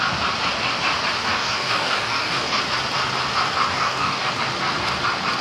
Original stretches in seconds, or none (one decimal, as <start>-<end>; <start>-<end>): 0.0-1.3; 2.6-3.7; 4.3-5.4